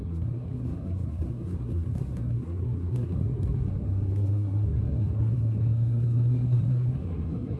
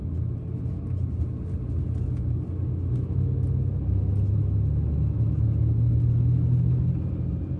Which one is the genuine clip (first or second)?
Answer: second